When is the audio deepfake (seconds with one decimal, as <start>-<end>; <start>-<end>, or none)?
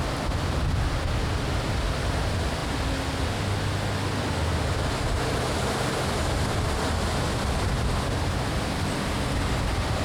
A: none